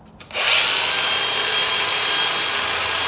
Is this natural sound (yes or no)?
yes